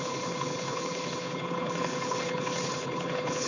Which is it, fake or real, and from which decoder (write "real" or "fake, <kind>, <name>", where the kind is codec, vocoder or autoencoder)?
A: fake, codec, HILCodec